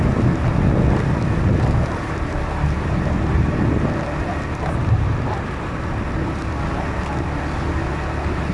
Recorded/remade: recorded